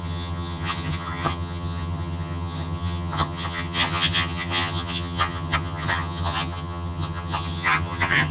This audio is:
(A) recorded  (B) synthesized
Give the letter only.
B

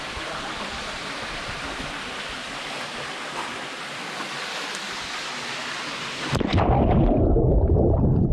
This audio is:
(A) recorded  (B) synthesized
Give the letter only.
A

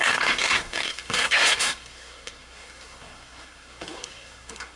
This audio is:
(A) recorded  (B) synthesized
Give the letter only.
B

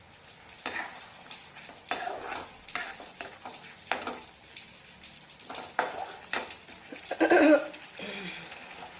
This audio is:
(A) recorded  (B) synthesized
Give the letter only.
A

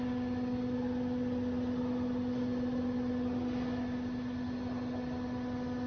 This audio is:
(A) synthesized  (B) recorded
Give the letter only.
B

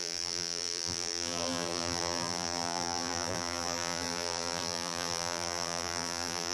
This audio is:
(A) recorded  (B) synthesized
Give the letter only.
B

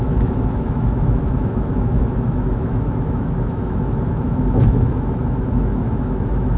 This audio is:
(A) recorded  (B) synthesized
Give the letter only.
B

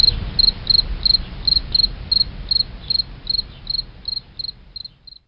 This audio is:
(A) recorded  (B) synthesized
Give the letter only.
A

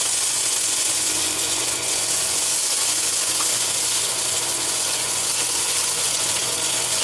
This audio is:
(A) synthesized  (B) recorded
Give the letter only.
A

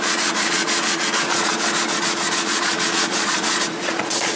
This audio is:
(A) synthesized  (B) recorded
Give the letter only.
A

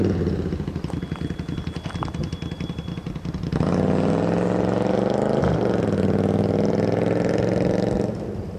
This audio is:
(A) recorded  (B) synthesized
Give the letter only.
A